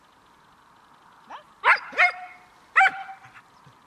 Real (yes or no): yes